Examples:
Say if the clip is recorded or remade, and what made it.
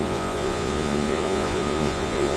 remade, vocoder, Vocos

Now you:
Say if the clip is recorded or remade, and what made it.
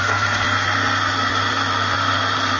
recorded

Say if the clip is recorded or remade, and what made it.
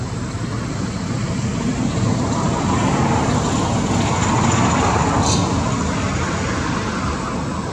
recorded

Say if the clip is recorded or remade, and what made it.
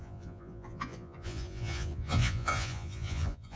remade, vocoder, Vocos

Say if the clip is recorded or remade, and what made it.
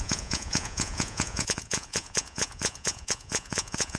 remade, vocoder, Vocos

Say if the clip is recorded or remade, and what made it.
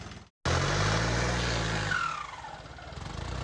recorded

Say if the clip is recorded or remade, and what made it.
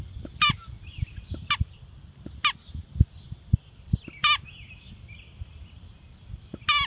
recorded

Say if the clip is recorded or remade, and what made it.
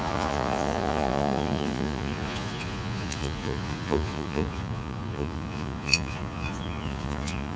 remade, vocoder, Vocos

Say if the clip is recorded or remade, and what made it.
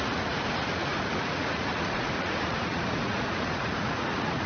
remade, vocoder, Vocos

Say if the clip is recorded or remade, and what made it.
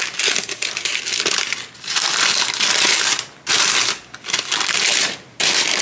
recorded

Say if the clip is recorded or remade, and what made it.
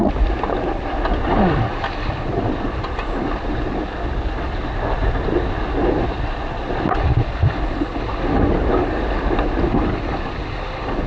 recorded